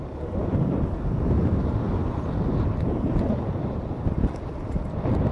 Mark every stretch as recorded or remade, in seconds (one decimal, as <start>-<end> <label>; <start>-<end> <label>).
0.0-5.3 recorded